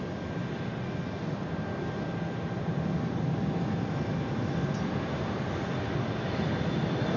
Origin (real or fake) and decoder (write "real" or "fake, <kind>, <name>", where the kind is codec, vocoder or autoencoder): real